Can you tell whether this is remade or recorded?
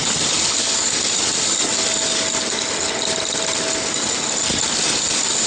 recorded